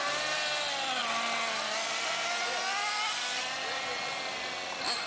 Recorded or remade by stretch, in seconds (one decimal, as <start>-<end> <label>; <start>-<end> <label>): 0.0-5.1 recorded